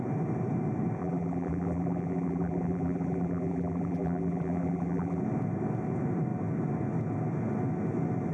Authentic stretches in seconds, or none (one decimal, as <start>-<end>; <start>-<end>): 0.0-1.0; 5.2-8.3